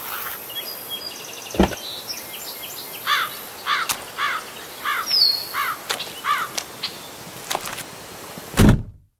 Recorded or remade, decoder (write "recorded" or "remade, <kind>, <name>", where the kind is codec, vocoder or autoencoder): recorded